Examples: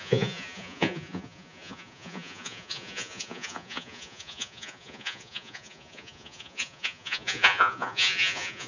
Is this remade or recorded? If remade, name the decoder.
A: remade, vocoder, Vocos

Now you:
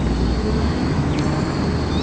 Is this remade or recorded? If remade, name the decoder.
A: recorded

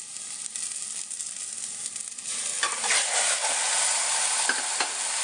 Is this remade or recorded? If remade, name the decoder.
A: recorded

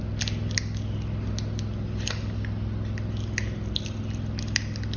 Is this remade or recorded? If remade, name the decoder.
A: recorded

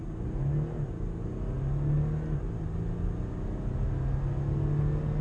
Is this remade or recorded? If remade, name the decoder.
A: recorded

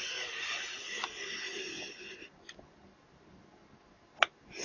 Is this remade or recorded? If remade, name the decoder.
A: recorded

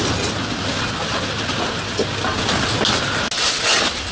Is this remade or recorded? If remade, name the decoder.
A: recorded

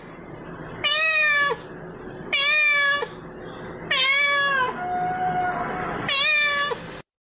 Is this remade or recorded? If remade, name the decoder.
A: recorded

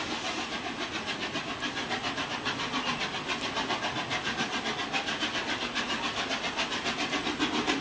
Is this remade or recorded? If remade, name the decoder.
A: recorded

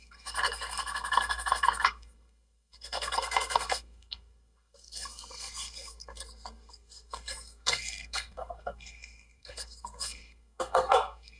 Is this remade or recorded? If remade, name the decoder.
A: remade, codec, SNAC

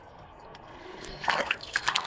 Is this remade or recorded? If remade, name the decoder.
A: remade, codec, SNAC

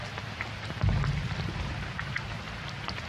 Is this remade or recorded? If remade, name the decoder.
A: recorded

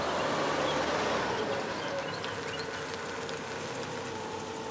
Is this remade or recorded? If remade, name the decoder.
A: recorded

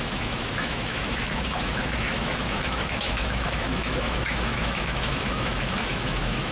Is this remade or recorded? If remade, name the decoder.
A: remade, autoencoder, DAC-VAE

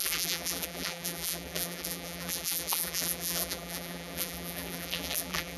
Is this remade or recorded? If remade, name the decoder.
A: remade, vocoder, BigVGAN v2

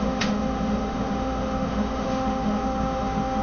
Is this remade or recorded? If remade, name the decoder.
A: remade, autoencoder, DAC-VAE